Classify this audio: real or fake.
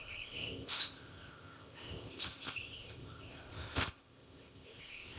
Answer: fake